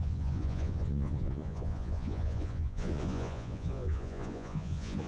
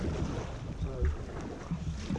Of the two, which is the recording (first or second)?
second